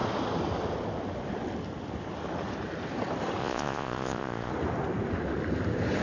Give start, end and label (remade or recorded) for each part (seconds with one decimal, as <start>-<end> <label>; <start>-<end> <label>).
0.0-3.4 recorded; 3.4-4.5 remade; 4.5-6.0 recorded

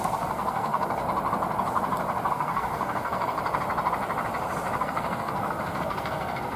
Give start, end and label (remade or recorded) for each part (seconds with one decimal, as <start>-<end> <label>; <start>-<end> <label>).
0.0-1.0 remade; 1.0-2.3 recorded; 2.3-3.4 remade; 3.4-4.8 recorded; 4.8-6.6 remade

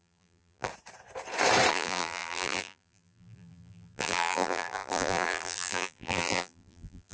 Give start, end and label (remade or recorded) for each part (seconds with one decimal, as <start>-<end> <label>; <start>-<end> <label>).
0.0-0.7 remade; 0.7-1.7 recorded; 1.7-7.1 remade